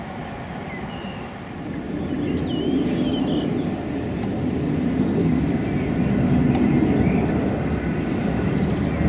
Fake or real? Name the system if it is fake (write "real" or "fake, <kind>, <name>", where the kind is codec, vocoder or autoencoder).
real